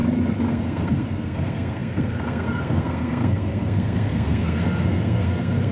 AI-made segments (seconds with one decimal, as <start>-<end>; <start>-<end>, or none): 0.5-5.7

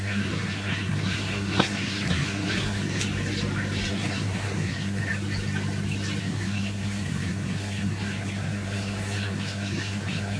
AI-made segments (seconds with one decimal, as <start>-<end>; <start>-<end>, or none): 0.0-3.0; 3.9-5.1; 6.2-10.4

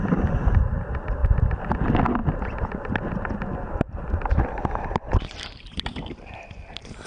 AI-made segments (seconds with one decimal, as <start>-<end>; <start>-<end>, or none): 0.0-2.2; 4.3-7.1

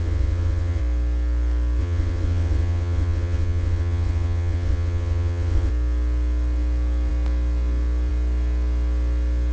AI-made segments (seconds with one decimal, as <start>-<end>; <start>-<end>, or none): 0.0-0.8; 1.8-5.7

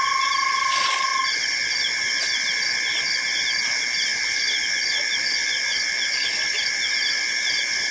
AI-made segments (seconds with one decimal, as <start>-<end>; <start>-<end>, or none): 4.1-6.9

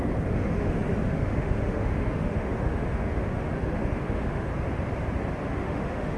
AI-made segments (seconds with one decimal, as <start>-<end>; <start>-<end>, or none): 0.0-4.5; 5.4-6.2